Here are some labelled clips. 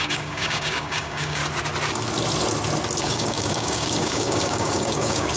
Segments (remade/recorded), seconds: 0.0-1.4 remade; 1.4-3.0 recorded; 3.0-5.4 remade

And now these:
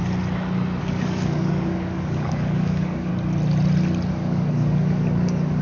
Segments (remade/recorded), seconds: 0.0-0.8 recorded; 0.8-3.1 remade; 3.1-4.1 recorded; 4.1-5.6 remade

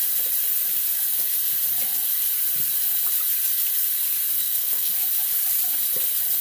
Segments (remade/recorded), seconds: 0.0-4.4 recorded; 4.4-4.9 remade; 4.9-6.4 recorded

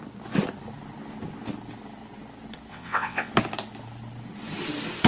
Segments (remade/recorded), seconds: 0.0-2.7 recorded; 2.7-3.3 remade; 3.3-5.1 recorded

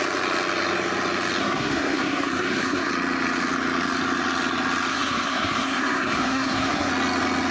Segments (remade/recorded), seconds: 0.0-1.4 recorded; 1.4-2.9 remade; 2.9-4.9 recorded; 4.9-6.9 remade; 6.9-7.5 recorded